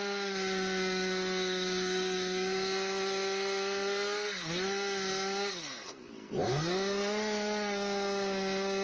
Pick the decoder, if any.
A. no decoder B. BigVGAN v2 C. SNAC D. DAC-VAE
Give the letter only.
C